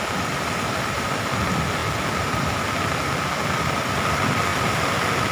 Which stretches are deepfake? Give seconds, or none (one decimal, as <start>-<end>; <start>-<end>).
none